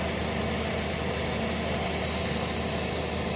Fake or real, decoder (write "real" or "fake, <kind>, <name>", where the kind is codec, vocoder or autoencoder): real